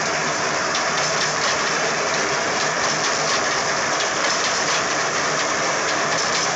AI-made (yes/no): yes